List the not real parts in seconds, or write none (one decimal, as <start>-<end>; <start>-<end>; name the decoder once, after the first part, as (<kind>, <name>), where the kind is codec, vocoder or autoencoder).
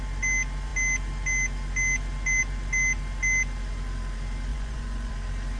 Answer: 4.5-5.1 (vocoder, Vocos)